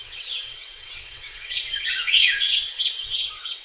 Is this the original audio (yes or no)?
no